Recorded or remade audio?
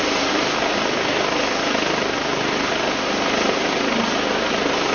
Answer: recorded